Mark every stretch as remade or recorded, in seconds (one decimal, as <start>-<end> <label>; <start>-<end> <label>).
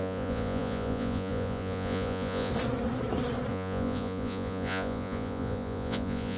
0.0-2.5 remade; 2.5-3.5 recorded; 3.5-6.4 remade